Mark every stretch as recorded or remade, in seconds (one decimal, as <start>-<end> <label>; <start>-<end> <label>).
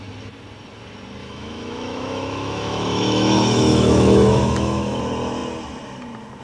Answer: 0.0-1.2 recorded; 1.2-5.0 remade; 5.0-6.4 recorded